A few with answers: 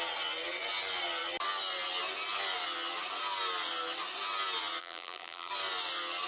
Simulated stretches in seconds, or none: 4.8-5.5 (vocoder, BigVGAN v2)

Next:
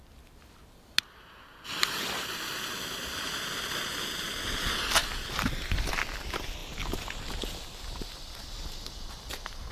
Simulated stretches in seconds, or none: 5.0-5.9 (vocoder, BigVGAN v2)

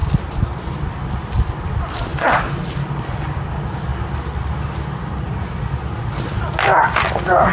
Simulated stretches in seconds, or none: 0.0-1.0 (vocoder, BigVGAN v2); 2.1-3.4

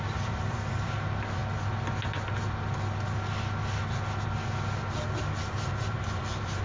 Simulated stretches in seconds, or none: 0.0-1.4 (vocoder, BigVGAN v2); 5.4-6.6

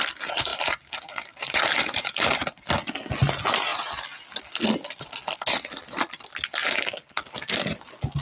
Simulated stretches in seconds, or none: 0.5-2.7 (vocoder, BigVGAN v2)

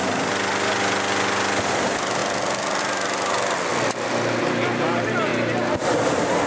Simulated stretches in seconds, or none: 1.7-2.2 (vocoder, BigVGAN v2); 2.8-5.3